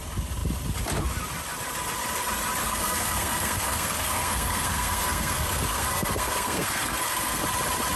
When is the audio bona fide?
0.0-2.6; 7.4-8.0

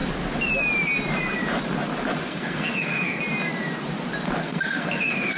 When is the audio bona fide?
0.0-2.2; 3.2-4.4